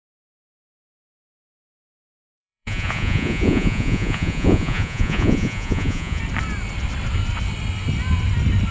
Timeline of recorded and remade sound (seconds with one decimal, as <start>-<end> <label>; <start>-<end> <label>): 0.0-1.8 recorded; 1.8-6.2 remade; 6.2-8.7 recorded